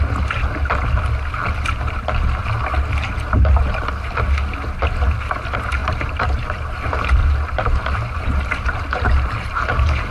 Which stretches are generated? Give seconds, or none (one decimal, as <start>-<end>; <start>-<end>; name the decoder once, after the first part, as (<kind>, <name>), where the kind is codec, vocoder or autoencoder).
5.8-6.6 (vocoder, BigVGAN v2); 7.2-10.1